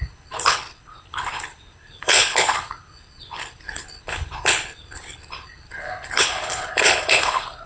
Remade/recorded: remade